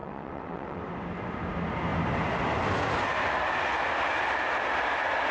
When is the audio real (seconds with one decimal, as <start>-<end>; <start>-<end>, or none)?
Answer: 0.8-5.3